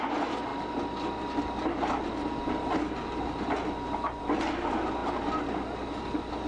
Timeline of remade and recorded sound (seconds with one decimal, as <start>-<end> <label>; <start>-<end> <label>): 0.0-6.5 recorded